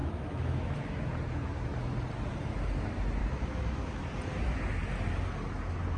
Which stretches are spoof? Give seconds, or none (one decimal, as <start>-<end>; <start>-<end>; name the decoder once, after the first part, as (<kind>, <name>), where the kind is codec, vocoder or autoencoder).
0.0-1.0 (autoencoder, DAC-VAE); 3.2-4.0